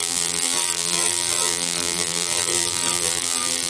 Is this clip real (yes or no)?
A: no